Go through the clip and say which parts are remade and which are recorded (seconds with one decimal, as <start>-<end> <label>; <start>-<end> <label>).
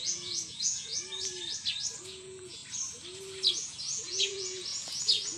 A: 0.0-0.9 remade; 0.9-2.0 recorded; 2.0-2.6 remade; 2.6-3.5 recorded; 3.5-5.4 remade